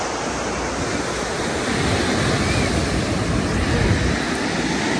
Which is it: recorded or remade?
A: recorded